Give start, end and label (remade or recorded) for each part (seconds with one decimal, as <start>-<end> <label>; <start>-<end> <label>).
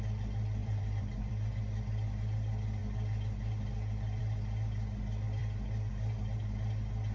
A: 0.0-0.6 recorded; 0.6-1.3 remade; 1.3-7.1 recorded